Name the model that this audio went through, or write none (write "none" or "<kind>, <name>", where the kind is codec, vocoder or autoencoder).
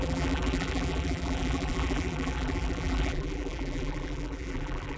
vocoder, BigVGAN v2